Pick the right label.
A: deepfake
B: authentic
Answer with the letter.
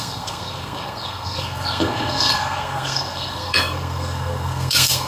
A